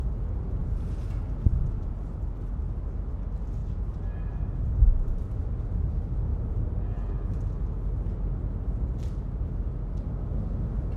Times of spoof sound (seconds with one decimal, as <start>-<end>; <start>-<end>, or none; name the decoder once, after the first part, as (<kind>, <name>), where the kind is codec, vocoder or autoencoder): 3.6-5.1 (vocoder, BigVGAN v2); 6.3-6.8